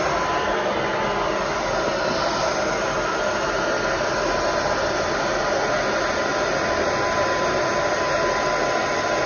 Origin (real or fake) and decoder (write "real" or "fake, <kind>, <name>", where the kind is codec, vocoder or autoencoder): real